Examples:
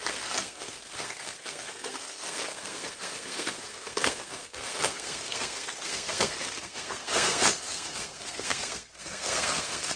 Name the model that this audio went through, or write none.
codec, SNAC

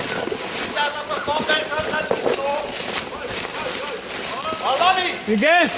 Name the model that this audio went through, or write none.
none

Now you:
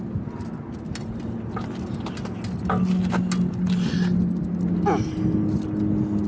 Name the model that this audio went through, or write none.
none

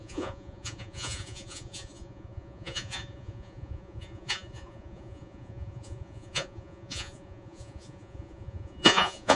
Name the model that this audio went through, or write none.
vocoder, Vocos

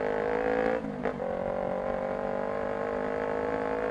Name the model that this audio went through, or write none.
none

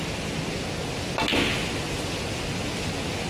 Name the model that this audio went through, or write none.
none